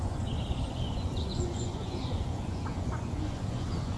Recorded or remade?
remade